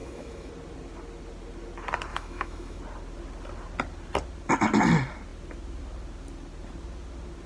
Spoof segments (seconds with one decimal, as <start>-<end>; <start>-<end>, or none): 0.0-0.5; 2.1-2.8